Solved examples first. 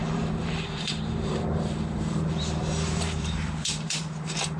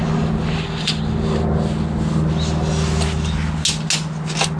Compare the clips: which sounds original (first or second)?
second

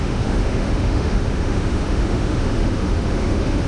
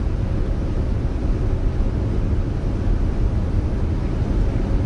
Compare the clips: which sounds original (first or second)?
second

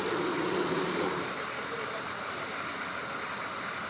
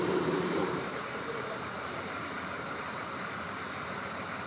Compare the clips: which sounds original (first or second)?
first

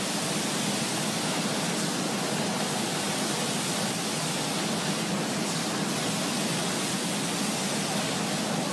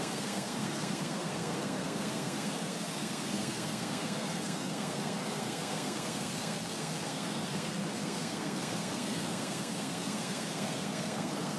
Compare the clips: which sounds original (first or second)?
first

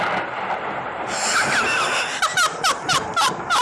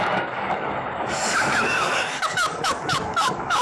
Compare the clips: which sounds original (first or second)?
first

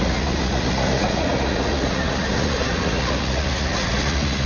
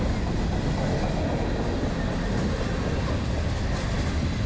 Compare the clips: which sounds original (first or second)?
second